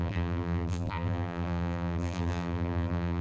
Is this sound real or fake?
fake